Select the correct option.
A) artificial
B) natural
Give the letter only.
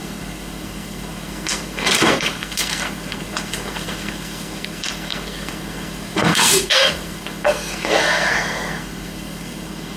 A